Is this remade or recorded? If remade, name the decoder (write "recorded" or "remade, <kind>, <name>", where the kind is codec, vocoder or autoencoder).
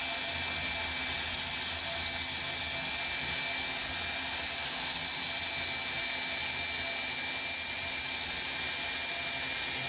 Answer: recorded